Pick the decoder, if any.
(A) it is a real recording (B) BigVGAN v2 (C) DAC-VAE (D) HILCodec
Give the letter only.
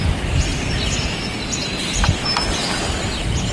A